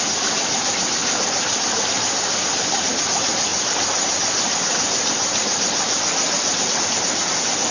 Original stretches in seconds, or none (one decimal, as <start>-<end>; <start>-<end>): 0.0-7.7